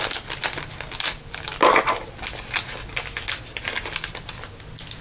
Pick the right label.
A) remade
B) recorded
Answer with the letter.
B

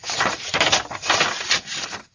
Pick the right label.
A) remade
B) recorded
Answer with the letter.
B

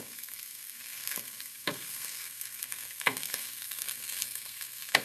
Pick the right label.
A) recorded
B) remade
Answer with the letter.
B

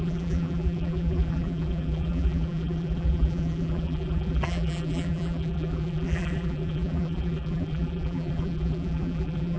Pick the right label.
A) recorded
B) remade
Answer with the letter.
B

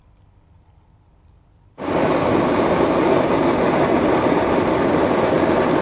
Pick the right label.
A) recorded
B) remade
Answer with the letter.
A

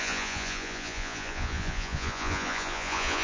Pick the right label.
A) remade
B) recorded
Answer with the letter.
A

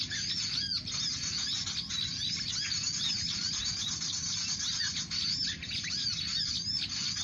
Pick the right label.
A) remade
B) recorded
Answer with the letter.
B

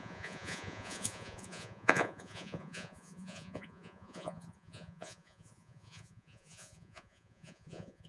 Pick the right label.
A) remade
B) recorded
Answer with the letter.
A